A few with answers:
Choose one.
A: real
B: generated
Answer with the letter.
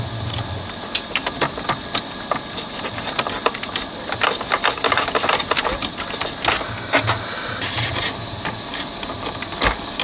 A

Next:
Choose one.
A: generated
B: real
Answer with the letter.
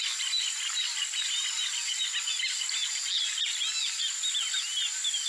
B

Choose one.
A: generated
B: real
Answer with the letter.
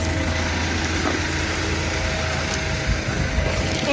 B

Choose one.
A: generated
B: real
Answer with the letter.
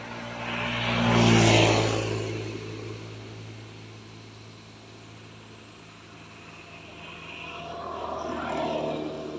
B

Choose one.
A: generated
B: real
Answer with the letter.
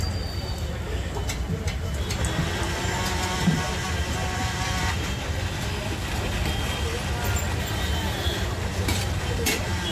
B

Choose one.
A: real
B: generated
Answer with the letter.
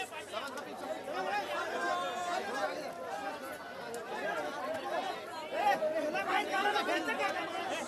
A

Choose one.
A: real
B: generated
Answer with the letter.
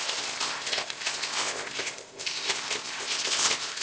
B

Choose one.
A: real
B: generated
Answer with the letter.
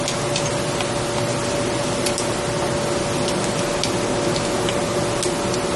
A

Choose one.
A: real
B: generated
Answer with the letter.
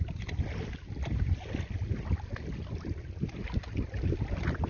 A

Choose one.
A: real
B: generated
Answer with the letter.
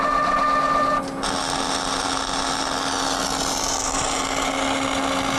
A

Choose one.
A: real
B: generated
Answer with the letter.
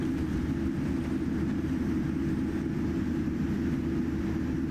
A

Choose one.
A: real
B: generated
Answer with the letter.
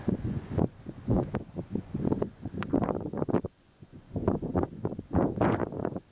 B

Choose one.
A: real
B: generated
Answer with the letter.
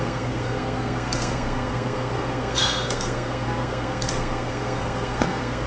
B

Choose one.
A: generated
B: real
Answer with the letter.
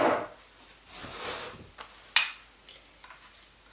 B